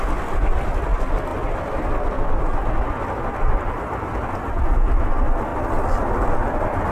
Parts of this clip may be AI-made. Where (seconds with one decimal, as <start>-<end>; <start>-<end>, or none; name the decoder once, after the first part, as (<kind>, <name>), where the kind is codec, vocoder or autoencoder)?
none